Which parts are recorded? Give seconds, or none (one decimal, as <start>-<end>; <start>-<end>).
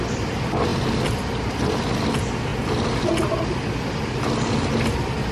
0.0-5.3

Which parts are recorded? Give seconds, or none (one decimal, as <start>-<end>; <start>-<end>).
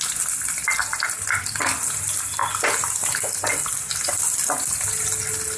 0.0-5.6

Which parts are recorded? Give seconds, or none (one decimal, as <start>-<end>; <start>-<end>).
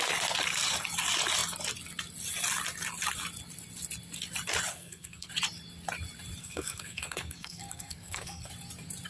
0.0-4.7; 5.3-6.4; 8.5-9.1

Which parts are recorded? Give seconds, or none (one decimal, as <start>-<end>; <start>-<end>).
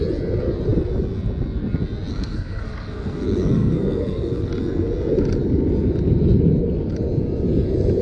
0.0-2.1; 4.5-8.0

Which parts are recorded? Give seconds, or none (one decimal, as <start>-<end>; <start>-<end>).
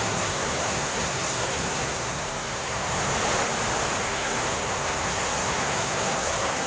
3.1-4.0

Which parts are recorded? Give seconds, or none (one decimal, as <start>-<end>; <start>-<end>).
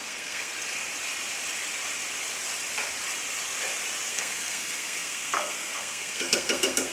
0.5-4.1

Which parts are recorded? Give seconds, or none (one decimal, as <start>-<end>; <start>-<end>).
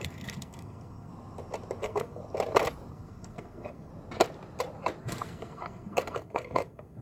1.1-1.8; 2.2-2.9; 3.9-5.0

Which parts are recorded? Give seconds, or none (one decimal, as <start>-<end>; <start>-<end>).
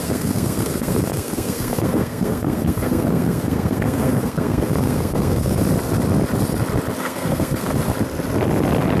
5.6-7.0; 7.7-9.0